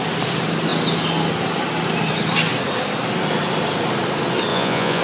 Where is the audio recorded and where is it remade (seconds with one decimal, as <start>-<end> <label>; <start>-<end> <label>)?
0.0-4.5 recorded; 4.5-5.0 remade

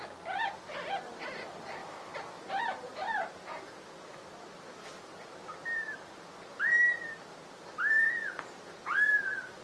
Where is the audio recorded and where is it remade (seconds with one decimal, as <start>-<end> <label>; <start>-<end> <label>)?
0.0-9.6 recorded